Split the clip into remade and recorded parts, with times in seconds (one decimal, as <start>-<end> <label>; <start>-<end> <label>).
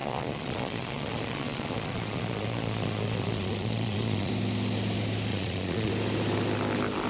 0.0-4.3 remade; 4.3-5.3 recorded; 5.3-5.9 remade; 5.9-7.1 recorded